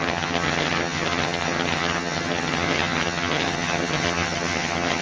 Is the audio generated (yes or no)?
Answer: yes